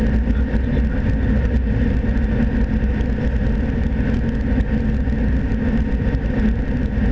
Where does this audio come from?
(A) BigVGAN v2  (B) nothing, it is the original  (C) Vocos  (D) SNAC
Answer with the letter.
B